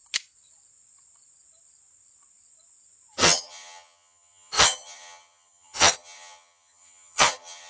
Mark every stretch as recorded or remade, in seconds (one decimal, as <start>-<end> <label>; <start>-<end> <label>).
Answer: 0.0-3.2 recorded; 3.2-7.7 remade